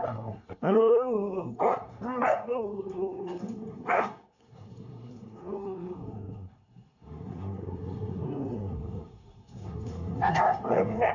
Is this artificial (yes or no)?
yes